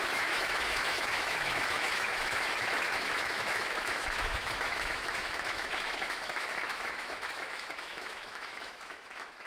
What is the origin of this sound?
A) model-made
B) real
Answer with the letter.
A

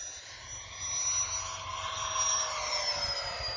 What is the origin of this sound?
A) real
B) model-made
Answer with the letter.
A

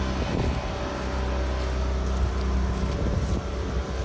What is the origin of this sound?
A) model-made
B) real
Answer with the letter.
B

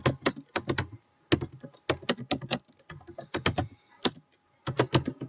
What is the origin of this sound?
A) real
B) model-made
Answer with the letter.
A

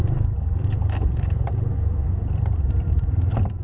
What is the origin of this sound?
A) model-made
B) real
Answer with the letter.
A